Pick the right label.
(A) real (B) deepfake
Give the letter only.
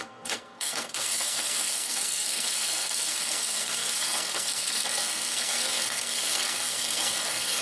B